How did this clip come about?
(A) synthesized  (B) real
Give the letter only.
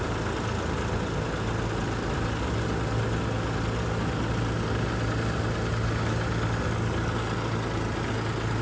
B